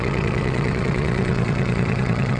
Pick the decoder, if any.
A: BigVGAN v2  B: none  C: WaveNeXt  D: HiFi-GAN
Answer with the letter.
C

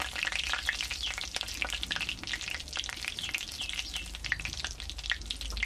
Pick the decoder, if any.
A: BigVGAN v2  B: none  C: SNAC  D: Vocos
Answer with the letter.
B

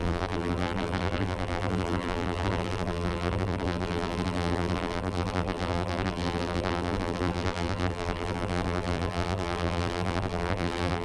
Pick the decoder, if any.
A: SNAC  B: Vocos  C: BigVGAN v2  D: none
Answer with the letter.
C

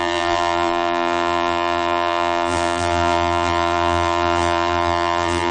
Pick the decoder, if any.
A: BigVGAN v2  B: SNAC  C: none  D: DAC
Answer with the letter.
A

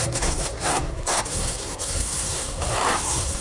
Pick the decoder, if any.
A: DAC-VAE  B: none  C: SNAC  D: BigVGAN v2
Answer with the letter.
C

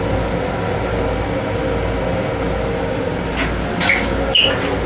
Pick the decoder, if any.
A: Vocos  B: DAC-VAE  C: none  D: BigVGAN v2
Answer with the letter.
C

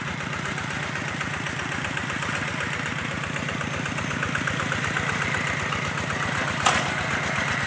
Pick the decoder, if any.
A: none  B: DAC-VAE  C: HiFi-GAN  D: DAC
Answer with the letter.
A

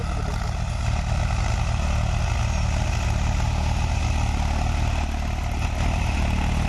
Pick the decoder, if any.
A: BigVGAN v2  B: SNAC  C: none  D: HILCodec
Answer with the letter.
C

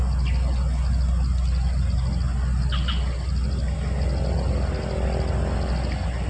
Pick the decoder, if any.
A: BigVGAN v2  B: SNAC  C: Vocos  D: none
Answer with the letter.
D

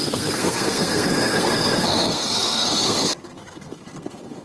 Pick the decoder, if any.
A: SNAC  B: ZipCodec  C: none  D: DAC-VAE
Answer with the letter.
A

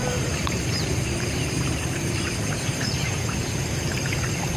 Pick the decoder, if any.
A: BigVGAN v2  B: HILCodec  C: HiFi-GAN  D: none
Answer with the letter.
A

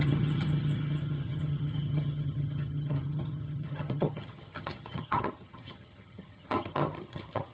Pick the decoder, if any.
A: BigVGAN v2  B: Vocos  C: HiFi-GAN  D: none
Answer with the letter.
C